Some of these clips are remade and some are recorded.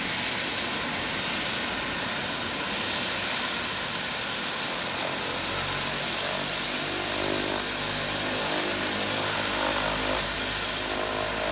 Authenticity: recorded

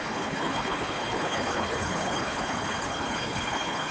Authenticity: remade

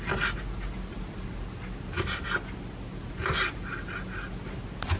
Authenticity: recorded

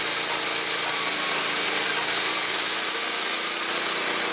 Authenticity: recorded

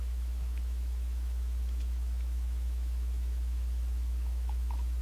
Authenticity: remade